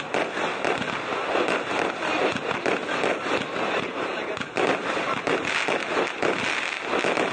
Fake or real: real